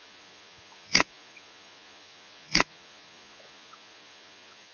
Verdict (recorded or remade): remade